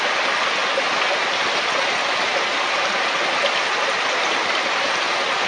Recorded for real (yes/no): yes